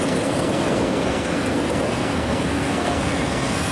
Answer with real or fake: fake